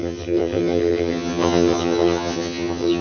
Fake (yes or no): yes